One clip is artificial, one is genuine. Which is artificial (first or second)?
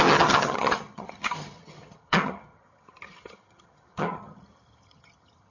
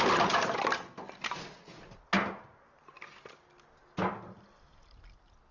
first